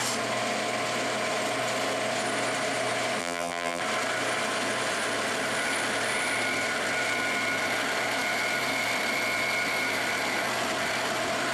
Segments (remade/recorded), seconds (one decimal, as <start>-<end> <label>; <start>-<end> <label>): 0.0-3.2 recorded; 3.2-3.8 remade; 3.8-11.5 recorded